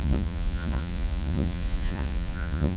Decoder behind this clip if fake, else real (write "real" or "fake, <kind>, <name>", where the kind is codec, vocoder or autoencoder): fake, vocoder, Vocos